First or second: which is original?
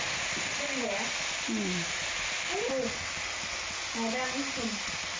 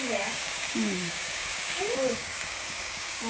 first